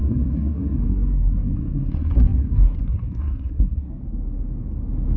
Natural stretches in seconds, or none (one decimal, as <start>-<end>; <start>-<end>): 4.0-5.2